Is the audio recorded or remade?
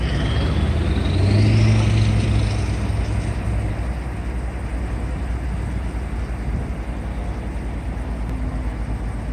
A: recorded